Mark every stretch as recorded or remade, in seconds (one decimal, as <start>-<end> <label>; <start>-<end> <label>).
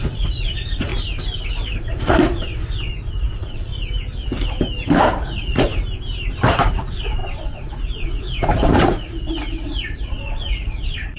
0.0-0.9 remade; 0.9-1.8 recorded; 1.8-3.7 remade; 3.7-5.2 recorded; 5.2-5.7 remade; 5.7-6.7 recorded; 6.7-11.2 remade